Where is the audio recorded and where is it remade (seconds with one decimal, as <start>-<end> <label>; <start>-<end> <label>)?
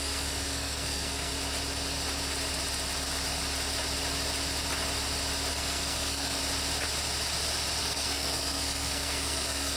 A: 0.0-1.3 remade; 1.3-5.5 recorded; 5.5-6.4 remade; 6.4-7.8 recorded; 7.8-9.8 remade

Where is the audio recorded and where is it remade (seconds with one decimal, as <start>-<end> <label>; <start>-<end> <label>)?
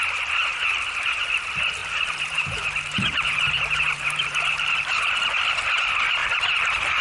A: 0.0-0.5 recorded; 0.5-1.1 remade; 1.1-1.8 recorded; 1.8-5.1 remade; 5.1-6.2 recorded; 6.2-7.0 remade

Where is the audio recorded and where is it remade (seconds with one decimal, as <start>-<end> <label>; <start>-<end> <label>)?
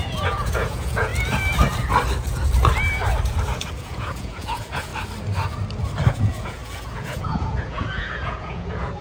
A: 0.0-1.1 remade; 1.1-3.8 recorded; 3.8-4.9 remade; 4.9-6.1 recorded; 6.1-9.0 remade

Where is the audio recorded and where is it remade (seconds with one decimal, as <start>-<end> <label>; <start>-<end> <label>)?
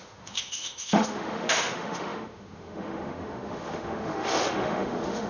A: 0.0-5.3 remade